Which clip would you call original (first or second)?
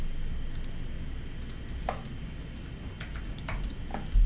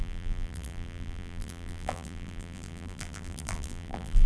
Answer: first